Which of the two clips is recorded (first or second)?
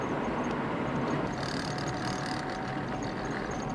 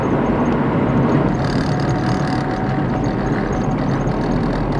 second